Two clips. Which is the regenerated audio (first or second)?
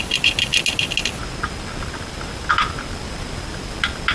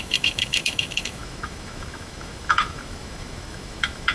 second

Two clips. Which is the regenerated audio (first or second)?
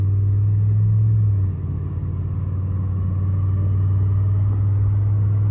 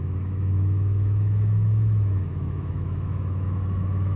second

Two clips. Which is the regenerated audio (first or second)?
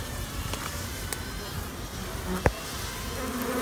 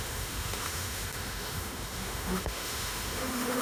second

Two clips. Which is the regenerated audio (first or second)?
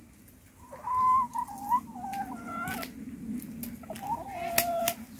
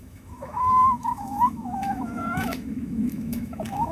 second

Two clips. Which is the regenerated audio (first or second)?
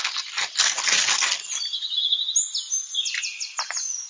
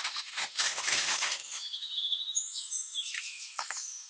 second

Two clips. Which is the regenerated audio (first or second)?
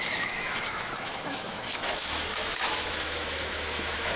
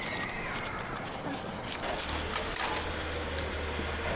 first